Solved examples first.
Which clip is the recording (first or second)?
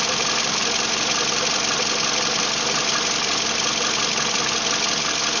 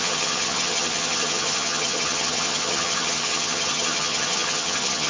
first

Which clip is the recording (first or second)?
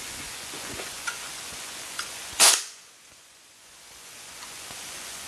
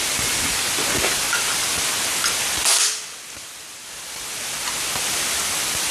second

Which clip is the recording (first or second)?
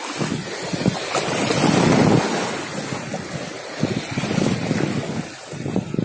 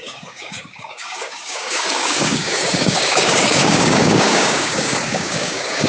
first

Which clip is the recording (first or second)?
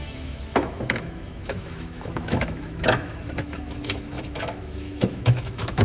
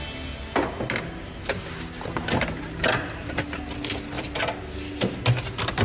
second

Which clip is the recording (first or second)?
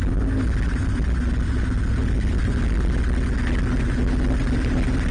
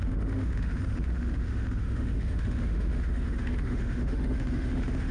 first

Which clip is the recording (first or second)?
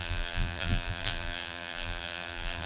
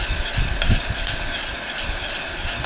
second